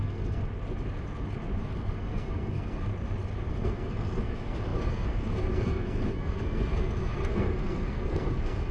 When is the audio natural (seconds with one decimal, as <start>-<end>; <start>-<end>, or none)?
0.4-1.6; 2.9-3.5